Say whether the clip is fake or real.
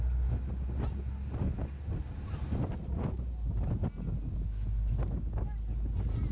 real